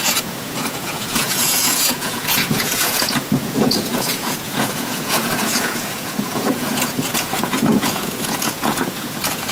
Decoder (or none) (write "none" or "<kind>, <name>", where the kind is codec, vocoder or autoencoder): vocoder, Vocos